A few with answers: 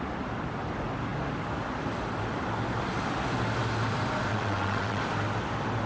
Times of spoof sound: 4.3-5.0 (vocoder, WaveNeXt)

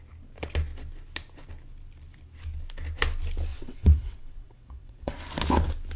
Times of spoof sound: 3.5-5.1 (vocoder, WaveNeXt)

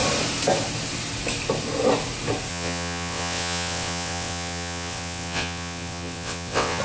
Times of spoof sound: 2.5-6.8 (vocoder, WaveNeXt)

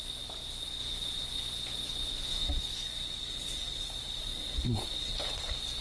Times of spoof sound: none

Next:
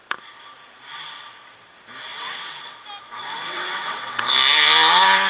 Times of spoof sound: 2.1-2.6 (vocoder, WaveNeXt); 3.2-4.2